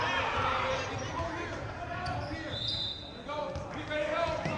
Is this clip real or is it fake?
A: real